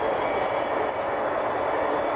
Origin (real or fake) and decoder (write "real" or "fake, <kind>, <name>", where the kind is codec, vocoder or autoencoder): real